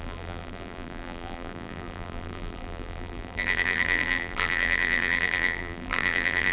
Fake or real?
fake